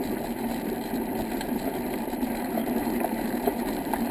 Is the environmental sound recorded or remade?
remade